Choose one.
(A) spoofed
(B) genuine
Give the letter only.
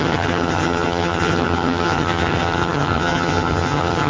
A